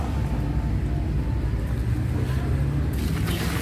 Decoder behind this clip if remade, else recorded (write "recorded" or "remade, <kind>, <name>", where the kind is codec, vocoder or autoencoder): recorded